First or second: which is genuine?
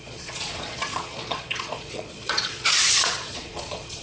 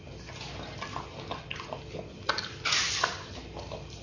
second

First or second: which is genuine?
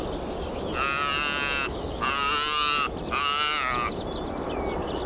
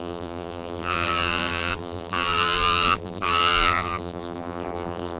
first